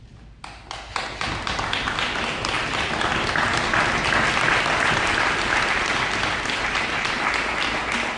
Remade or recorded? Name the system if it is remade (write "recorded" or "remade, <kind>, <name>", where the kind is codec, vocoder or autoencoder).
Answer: recorded